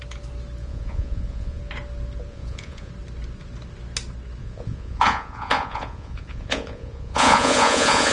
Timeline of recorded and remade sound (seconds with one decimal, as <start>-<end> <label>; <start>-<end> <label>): 0.0-0.6 recorded; 0.6-1.6 remade; 1.6-2.3 recorded; 2.3-2.9 remade; 2.9-4.4 recorded; 4.4-8.1 remade